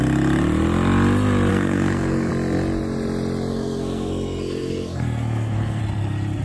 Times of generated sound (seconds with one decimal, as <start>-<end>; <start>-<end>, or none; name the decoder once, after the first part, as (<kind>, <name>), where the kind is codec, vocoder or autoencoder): 1.5-2.3 (codec, SNAC); 3.5-5.8